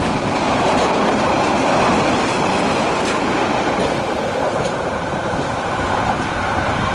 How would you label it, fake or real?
real